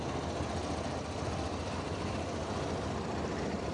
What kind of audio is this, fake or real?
real